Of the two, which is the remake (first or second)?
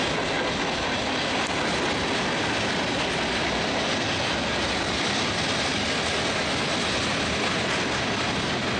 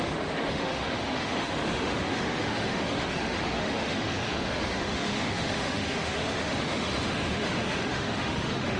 second